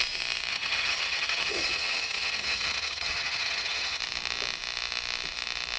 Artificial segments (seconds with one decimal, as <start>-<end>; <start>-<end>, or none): 0.5-4.0